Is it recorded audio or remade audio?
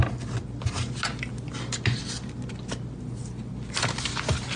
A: recorded